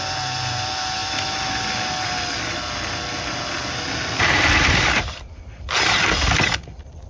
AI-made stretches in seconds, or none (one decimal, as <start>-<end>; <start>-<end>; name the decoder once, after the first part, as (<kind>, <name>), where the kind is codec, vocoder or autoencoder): none